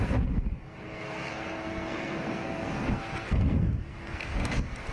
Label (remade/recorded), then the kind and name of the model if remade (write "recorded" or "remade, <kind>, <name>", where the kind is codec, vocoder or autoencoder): remade, codec, SNAC